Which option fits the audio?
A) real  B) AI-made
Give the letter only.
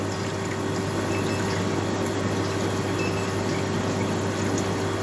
A